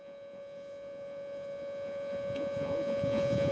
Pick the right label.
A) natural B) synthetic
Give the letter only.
B